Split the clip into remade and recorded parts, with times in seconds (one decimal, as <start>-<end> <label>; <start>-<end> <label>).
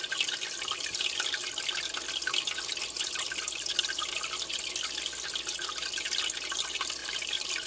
0.0-7.0 recorded; 7.0-7.7 remade